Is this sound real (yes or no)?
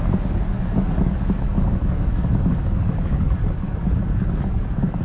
no